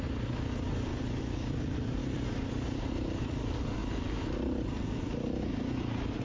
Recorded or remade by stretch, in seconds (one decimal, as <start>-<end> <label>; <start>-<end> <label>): 0.0-0.9 remade; 0.9-1.5 recorded; 1.5-2.0 remade; 2.0-2.8 recorded; 2.8-3.8 remade; 3.8-6.2 recorded